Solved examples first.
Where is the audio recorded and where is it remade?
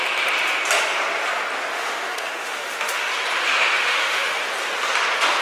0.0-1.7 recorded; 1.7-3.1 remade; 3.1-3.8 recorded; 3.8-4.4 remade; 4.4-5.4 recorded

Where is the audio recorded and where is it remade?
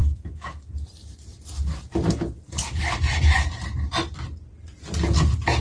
0.0-0.7 remade; 0.7-5.6 recorded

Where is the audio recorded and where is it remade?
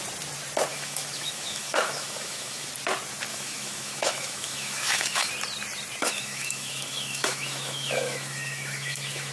0.0-0.7 recorded; 0.7-2.7 remade; 2.7-3.3 recorded; 3.3-5.3 remade; 5.3-6.0 recorded; 6.0-9.3 remade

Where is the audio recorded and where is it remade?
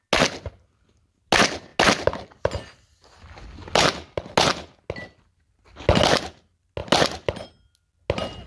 0.0-8.5 recorded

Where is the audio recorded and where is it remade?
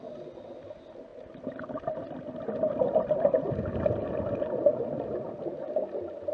0.0-6.3 recorded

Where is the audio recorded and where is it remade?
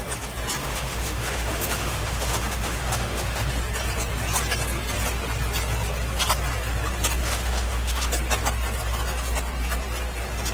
0.0-0.6 recorded; 0.6-3.5 remade; 3.5-7.2 recorded; 7.2-8.1 remade; 8.1-10.5 recorded